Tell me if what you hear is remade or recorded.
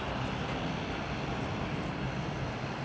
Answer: remade